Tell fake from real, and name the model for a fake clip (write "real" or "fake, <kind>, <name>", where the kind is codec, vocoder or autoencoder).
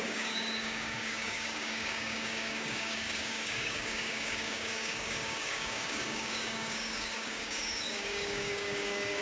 fake, codec, DAC